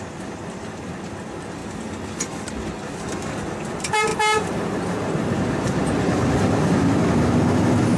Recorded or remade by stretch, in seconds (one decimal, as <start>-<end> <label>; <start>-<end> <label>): 0.0-4.1 recorded; 4.1-5.4 remade; 5.4-8.0 recorded